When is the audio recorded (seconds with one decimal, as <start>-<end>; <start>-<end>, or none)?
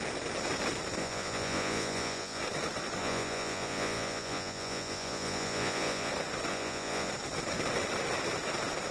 0.0-1.0; 2.4-3.0; 6.1-6.5; 7.1-8.9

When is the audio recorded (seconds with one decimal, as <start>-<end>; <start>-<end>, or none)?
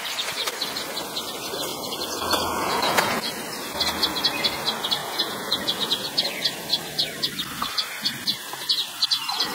0.0-1.7; 3.3-5.0; 5.9-9.5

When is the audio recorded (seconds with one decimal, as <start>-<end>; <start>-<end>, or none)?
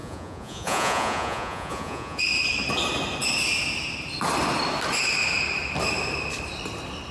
2.2-7.1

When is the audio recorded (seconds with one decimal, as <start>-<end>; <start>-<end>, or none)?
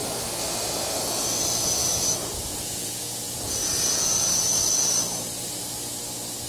0.0-1.8; 4.9-6.5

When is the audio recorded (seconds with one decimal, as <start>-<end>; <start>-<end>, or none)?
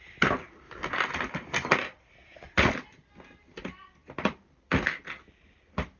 0.0-6.0